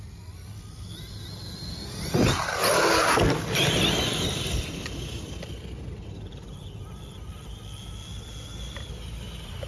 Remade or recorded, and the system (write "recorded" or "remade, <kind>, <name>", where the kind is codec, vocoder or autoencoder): recorded